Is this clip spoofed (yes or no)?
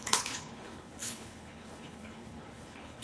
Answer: yes